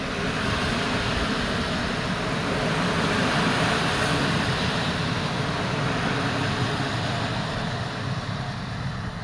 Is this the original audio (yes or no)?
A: yes